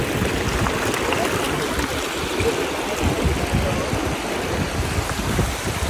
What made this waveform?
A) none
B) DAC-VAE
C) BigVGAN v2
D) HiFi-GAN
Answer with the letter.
A